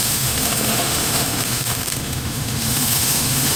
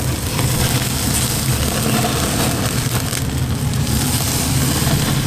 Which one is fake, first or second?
first